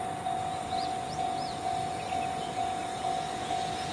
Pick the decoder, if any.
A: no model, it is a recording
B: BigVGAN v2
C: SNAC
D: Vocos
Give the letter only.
D